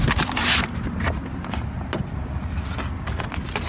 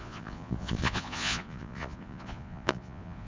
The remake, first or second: second